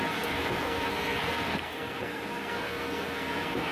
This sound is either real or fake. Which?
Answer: fake